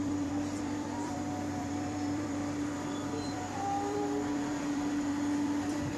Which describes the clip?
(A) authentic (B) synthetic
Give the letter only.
B